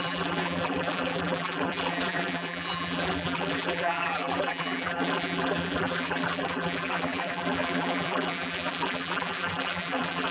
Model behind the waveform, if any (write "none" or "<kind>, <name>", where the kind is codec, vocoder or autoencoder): vocoder, BigVGAN v2